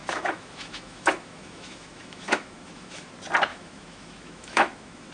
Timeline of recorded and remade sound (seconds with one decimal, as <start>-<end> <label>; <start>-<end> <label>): 0.0-3.1 remade; 3.1-3.5 recorded; 3.5-5.1 remade